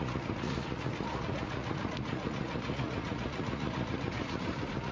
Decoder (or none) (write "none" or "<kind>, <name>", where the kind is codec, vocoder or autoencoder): vocoder, Vocos